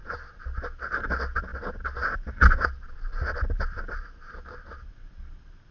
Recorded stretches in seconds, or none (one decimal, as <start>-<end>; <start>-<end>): 0.0-5.7